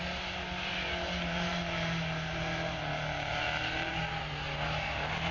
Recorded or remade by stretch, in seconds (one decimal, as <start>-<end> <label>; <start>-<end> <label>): 0.0-5.3 recorded